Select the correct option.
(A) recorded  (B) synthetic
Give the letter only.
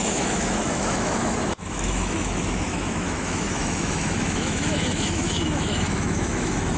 B